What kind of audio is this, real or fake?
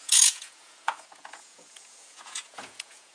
fake